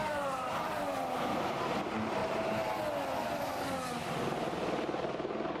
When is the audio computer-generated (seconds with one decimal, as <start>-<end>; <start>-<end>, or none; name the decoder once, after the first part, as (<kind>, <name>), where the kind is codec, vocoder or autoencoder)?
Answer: 0.0-0.7 (vocoder, BigVGAN v2); 2.2-2.8